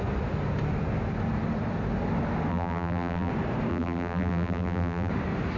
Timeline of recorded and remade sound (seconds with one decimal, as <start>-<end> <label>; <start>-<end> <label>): 0.0-2.5 recorded; 2.5-3.3 remade; 3.3-3.7 recorded; 3.7-5.1 remade; 5.1-5.6 recorded